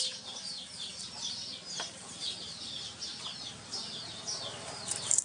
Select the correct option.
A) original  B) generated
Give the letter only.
A